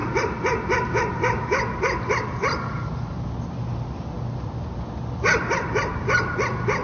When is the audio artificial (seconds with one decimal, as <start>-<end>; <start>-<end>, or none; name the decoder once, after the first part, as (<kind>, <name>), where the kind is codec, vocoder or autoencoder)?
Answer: none

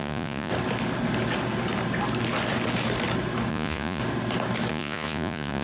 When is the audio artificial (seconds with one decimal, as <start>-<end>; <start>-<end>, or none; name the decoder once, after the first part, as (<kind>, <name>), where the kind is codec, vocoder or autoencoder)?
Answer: 0.0-0.5 (vocoder, Vocos); 3.5-4.0; 4.7-5.6

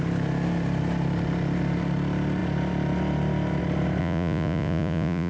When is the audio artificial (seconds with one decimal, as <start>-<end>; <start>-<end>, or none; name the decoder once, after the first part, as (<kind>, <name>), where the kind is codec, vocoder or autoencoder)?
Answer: 4.0-5.3 (vocoder, Vocos)

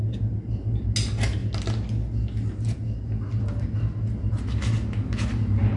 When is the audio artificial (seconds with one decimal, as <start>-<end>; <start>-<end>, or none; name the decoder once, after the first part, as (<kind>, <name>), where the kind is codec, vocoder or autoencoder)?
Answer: none

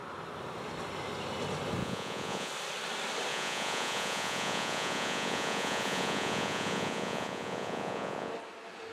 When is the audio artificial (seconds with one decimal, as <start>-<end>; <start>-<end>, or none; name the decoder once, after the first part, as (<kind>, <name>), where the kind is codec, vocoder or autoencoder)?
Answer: 1.8-2.5 (vocoder, Vocos); 3.3-8.3

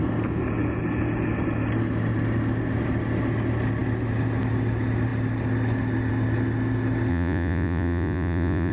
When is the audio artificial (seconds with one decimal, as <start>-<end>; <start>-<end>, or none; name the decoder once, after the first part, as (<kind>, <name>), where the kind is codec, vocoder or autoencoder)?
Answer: 7.1-8.7 (vocoder, Vocos)

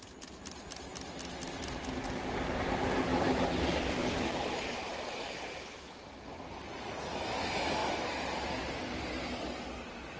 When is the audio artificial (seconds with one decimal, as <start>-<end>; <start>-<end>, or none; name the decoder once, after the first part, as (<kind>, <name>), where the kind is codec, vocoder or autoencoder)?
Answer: none